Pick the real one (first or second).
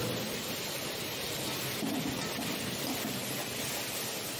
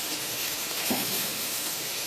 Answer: first